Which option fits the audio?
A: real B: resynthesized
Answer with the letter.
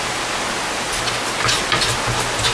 A